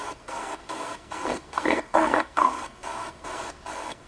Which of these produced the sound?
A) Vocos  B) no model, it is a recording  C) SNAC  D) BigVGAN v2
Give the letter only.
C